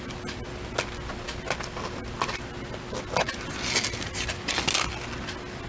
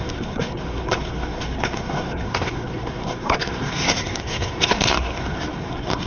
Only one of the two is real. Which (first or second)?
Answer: first